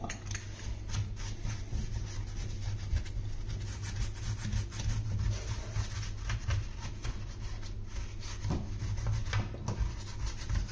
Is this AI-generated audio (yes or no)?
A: no